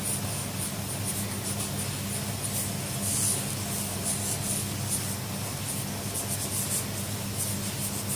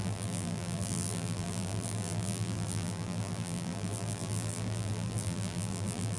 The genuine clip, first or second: first